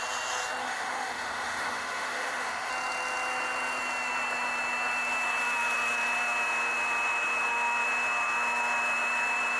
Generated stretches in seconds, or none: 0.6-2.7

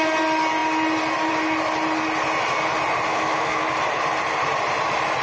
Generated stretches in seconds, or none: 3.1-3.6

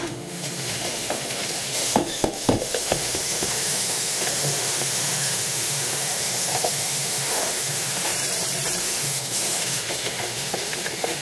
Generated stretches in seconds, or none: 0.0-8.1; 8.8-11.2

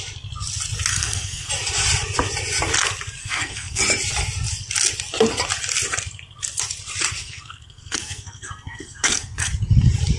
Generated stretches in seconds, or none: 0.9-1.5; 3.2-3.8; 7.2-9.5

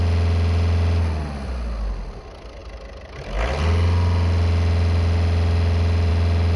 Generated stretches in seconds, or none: none

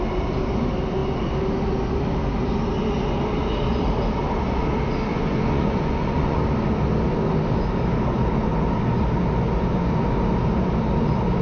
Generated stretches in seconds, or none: 5.1-6.4

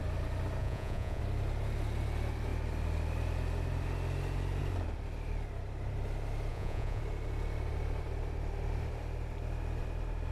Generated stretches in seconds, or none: 0.6-1.2; 6.5-7.0

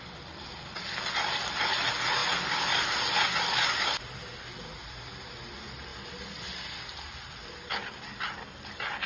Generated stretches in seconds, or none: none